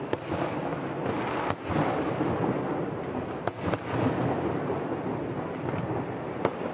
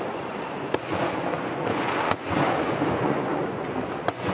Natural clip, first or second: first